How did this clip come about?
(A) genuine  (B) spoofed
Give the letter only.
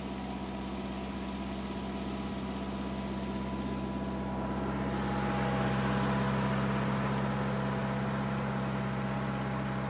A